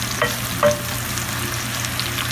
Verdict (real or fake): real